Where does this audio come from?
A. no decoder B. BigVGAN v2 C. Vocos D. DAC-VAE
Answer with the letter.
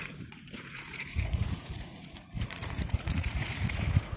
C